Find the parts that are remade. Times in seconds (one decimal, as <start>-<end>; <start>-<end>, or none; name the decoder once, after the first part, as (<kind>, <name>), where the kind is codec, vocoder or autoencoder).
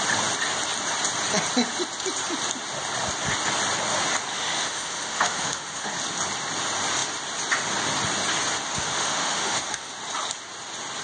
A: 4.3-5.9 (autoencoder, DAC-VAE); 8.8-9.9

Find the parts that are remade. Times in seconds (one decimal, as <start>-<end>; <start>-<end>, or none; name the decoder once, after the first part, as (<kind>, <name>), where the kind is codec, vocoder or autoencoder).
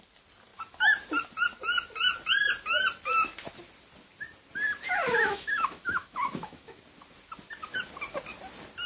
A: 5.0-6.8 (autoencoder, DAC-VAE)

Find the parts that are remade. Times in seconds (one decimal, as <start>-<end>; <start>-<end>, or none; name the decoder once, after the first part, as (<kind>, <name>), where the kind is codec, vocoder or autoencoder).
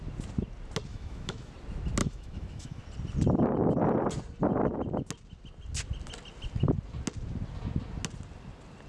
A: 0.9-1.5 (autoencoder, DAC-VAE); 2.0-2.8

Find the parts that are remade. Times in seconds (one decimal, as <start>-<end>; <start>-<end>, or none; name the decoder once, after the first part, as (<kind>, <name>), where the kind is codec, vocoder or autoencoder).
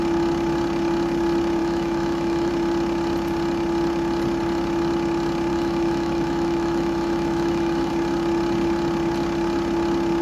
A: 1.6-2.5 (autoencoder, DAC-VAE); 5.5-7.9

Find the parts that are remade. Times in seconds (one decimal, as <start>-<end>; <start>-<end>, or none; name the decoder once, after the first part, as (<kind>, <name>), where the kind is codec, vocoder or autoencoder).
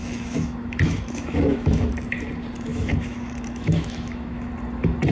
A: 0.0-1.9 (autoencoder, DAC-VAE); 2.7-4.5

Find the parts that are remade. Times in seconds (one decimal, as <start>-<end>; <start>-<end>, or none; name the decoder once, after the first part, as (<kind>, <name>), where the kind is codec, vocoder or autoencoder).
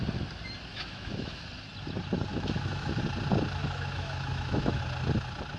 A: 0.7-1.4 (autoencoder, DAC-VAE); 2.3-3.0; 3.6-4.8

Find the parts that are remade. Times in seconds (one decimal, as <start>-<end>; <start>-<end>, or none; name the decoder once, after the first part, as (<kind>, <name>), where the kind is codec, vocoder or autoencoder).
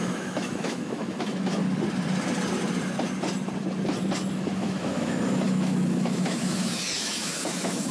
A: 0.0-1.6 (autoencoder, DAC-VAE); 4.3-7.9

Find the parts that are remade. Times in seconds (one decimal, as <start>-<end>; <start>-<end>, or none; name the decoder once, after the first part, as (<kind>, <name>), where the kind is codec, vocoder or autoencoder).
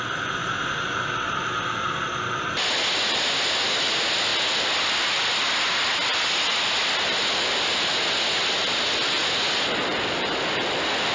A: none